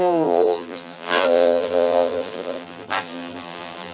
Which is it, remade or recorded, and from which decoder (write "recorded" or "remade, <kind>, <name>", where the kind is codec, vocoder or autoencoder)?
remade, vocoder, BigVGAN v2